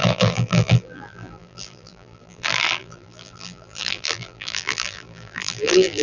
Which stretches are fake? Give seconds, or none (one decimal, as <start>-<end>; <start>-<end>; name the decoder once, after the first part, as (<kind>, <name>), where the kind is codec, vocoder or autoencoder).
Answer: 0.0-6.0 (vocoder, BigVGAN v2)